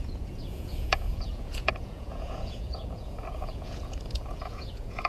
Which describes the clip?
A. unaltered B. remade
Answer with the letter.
B